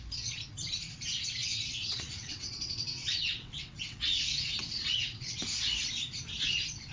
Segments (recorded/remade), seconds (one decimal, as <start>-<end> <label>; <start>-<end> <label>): 0.0-1.4 recorded; 1.4-5.4 remade; 5.4-6.9 recorded

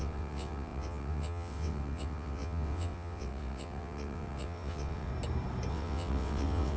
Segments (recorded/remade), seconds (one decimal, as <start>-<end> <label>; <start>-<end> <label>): 0.0-5.1 remade; 5.1-5.7 recorded; 5.7-6.8 remade

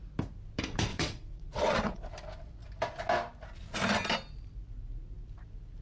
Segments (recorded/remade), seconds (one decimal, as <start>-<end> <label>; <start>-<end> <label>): 0.0-0.9 recorded; 0.9-2.1 remade; 2.1-5.8 recorded

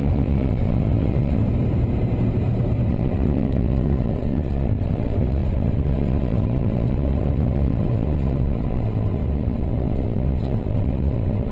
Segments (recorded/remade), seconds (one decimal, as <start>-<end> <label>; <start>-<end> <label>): 0.0-1.4 remade; 1.4-2.9 recorded; 2.9-11.5 remade

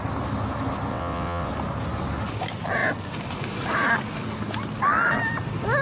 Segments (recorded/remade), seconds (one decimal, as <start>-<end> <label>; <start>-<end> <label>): 0.0-0.9 recorded; 0.9-1.5 remade; 1.5-5.8 recorded

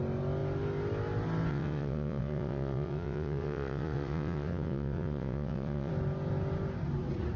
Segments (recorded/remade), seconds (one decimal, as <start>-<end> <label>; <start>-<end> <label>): 0.0-1.5 recorded; 1.5-5.9 remade; 5.9-7.4 recorded

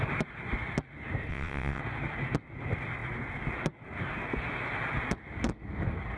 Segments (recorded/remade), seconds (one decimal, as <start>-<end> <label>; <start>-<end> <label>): 0.0-1.3 recorded; 1.3-1.8 remade; 1.8-6.2 recorded

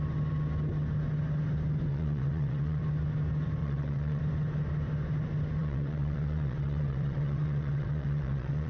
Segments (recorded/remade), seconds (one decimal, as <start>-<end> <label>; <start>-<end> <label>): 0.0-1.9 recorded; 1.9-2.8 remade; 2.8-3.6 recorded; 3.6-4.2 remade; 4.2-5.6 recorded; 5.6-8.7 remade